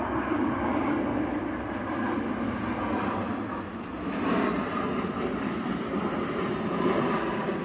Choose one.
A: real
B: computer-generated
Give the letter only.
A